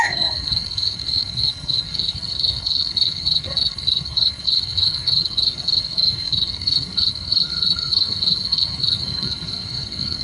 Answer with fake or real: fake